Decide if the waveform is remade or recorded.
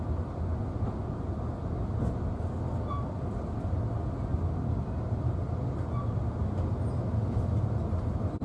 recorded